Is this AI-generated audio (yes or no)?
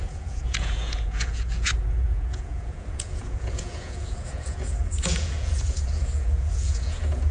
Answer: yes